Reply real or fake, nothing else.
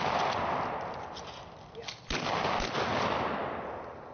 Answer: real